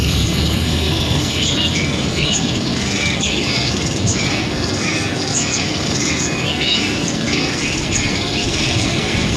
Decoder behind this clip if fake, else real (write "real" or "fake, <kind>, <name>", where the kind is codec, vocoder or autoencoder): fake, codec, SNAC